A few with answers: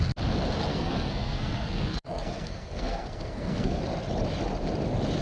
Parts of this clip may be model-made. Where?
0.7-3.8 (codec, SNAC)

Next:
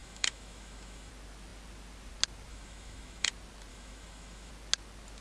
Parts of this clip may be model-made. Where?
0.0-1.1 (autoencoder, DAC-VAE); 2.5-3.3; 3.7-4.5

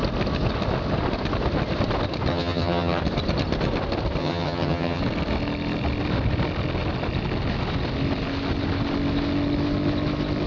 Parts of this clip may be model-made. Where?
2.3-3.0 (vocoder, HiFi-GAN); 4.2-5.0

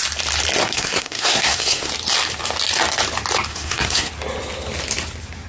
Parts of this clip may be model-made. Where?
0.6-1.9 (codec, SNAC); 3.5-4.1

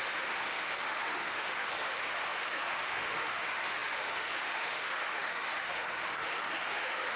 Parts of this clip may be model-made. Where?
0.0-7.2 (autoencoder, DAC-VAE)

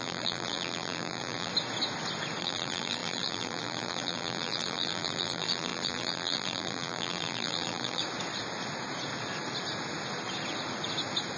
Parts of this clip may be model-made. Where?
0.0-1.5 (vocoder, BigVGAN v2); 2.4-8.0

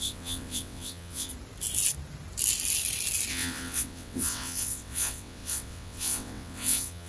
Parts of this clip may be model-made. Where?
0.0-1.3 (vocoder, WaveNeXt); 3.3-7.1

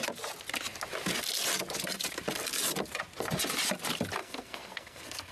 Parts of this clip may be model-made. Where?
4.2-5.3 (codec, SNAC)